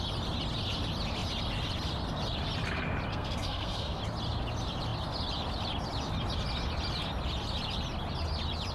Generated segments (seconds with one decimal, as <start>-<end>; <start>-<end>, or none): 3.1-4.0